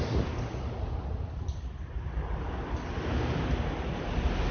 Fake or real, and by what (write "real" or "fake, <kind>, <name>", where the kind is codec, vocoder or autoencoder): real